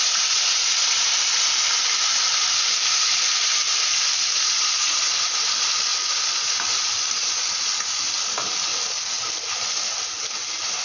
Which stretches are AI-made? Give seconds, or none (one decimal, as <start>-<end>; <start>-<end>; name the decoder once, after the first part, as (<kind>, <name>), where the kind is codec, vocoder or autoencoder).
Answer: none